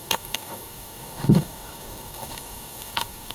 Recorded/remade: remade